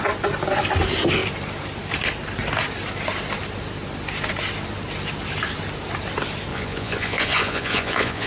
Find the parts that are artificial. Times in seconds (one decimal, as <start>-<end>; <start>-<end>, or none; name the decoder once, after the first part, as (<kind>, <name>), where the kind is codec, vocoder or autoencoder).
6.5-8.3 (vocoder, Vocos)